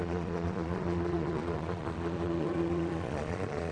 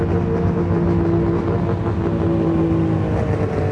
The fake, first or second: first